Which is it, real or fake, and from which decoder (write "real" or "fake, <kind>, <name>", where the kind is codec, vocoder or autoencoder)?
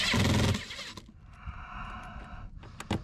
real